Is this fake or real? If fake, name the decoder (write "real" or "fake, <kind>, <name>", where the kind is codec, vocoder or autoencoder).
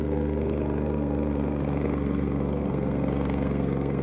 fake, codec, SNAC